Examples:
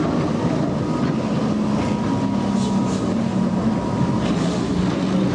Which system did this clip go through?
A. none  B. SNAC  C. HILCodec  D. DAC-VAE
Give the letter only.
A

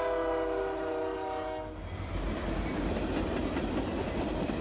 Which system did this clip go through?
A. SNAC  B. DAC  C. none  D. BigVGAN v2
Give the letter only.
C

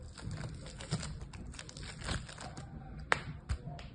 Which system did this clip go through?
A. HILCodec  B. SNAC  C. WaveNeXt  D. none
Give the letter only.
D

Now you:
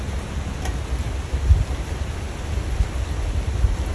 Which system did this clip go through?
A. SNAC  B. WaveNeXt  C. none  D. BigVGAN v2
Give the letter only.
C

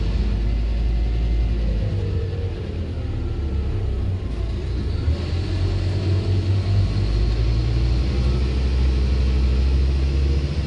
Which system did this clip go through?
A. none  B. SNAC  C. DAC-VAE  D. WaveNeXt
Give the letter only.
A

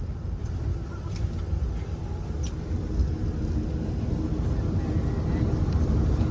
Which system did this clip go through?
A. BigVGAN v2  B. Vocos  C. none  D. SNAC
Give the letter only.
C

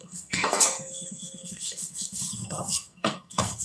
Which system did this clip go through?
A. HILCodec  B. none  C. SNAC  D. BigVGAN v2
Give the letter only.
C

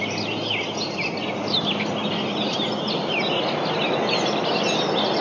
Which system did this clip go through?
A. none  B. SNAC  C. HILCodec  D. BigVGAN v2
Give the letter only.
A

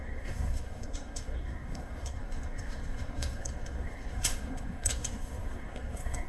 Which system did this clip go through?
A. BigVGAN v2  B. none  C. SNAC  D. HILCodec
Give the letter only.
C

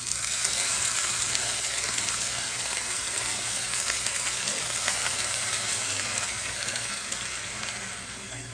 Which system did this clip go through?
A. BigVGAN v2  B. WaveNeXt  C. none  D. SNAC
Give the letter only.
D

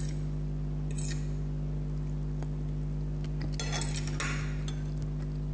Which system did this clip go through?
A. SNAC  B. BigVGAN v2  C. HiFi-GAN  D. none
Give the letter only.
D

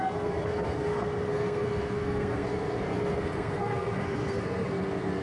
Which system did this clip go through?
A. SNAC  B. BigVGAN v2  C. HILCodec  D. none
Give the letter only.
A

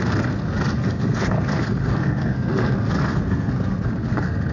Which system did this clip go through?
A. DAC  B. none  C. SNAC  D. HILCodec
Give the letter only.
C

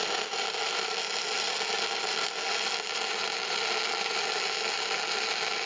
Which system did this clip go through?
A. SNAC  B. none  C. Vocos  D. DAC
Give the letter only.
B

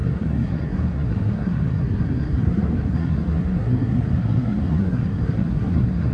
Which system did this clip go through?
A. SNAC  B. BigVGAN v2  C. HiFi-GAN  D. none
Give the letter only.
A